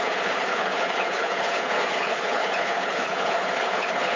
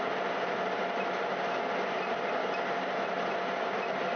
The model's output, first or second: first